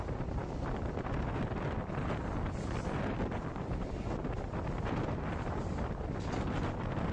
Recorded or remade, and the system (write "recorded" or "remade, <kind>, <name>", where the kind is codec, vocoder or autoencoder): recorded